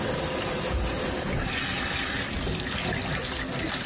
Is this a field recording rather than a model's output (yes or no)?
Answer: yes